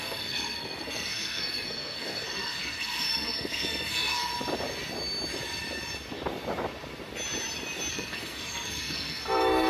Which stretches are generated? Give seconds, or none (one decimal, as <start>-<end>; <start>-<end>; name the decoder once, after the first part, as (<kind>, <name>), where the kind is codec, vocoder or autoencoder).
0.0-4.3 (codec, SNAC); 7.9-9.7